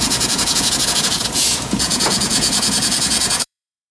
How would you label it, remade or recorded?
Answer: remade